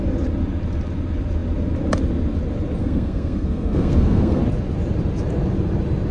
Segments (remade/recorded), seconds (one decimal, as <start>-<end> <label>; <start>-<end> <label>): 0.0-2.8 recorded; 2.8-4.4 remade; 4.4-6.1 recorded